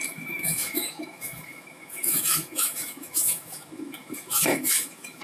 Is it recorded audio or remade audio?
remade